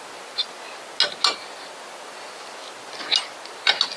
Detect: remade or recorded recorded